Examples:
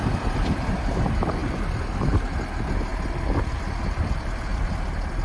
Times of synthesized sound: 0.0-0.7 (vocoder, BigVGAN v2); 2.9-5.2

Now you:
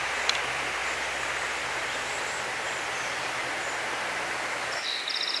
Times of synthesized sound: none

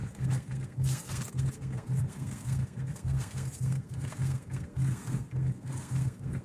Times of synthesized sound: 0.0-6.4 (codec, SNAC)

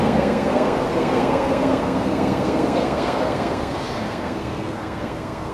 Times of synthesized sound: 0.0-5.5 (codec, SNAC)

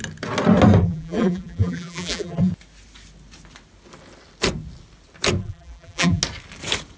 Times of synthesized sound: 0.8-2.5 (vocoder, BigVGAN v2); 5.4-6.2

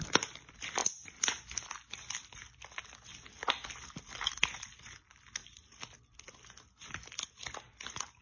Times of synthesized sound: none

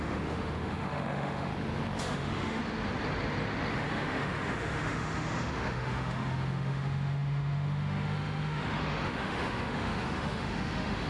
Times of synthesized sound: 0.0-1.5 (autoencoder, DAC-VAE); 2.0-2.6; 3.7-11.1

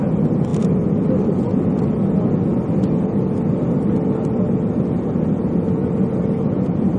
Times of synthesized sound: none